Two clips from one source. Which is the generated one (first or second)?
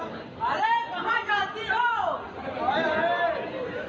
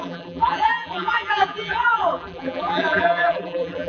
second